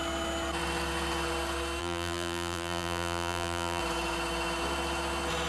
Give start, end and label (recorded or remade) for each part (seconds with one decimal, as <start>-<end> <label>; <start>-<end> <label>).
0.0-1.8 recorded; 1.8-3.8 remade; 3.8-5.5 recorded